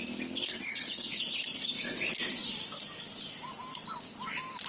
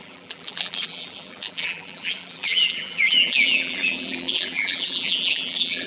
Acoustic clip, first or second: first